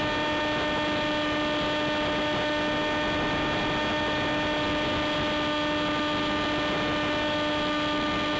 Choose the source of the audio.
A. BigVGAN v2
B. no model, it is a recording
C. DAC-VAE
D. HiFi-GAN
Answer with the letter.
B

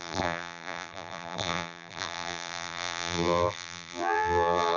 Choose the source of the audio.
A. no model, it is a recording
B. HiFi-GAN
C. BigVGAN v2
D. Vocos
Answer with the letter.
C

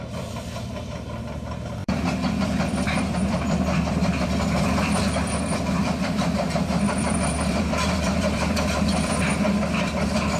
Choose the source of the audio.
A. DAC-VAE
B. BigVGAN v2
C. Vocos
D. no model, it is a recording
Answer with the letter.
B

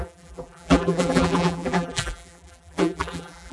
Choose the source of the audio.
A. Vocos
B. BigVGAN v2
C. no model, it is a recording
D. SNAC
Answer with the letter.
B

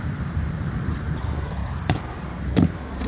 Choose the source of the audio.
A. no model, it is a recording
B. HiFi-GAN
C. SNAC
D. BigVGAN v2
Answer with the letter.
D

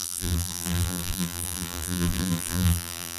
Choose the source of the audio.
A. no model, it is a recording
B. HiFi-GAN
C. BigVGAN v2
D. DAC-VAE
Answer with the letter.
C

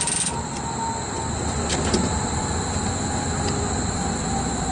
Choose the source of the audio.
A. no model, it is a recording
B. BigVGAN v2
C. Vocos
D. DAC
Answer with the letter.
A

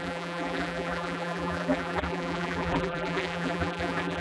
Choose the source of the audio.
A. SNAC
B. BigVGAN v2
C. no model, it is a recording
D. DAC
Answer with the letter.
B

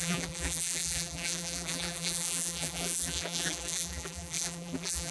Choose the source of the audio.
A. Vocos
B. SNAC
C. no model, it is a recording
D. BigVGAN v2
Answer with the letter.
D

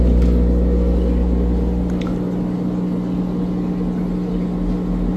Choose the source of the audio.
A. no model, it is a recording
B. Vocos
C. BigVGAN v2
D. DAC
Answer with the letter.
A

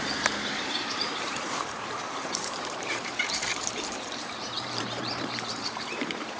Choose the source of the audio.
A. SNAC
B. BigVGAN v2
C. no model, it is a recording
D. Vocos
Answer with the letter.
B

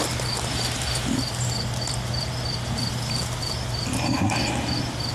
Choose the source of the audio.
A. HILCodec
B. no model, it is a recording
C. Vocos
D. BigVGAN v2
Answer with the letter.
B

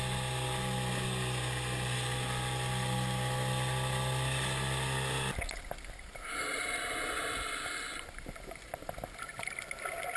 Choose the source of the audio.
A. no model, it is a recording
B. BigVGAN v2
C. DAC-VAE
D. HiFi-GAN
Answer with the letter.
A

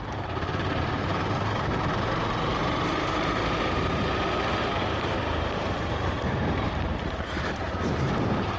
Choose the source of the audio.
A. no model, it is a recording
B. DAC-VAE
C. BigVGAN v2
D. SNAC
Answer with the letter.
C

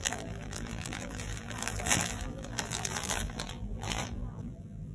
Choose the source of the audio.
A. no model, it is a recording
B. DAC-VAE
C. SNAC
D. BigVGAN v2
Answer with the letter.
D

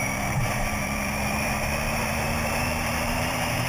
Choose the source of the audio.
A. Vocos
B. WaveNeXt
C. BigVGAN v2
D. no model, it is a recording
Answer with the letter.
C